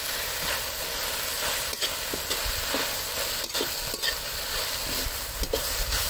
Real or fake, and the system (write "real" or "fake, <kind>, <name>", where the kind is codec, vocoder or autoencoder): real